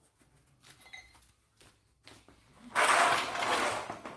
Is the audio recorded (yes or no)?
yes